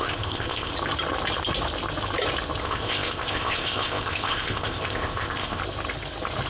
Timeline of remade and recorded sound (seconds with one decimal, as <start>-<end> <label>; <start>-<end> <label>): 0.0-0.7 remade; 0.7-2.6 recorded; 2.6-5.6 remade; 5.6-6.5 recorded